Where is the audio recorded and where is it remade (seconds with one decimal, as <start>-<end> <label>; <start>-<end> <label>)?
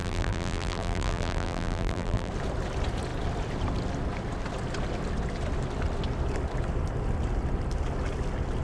0.0-2.3 remade; 2.3-8.6 recorded